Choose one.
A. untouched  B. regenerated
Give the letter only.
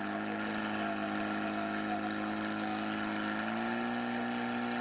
A